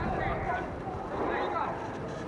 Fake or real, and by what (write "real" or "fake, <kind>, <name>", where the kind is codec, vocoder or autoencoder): real